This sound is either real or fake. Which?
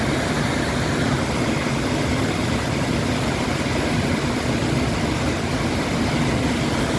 real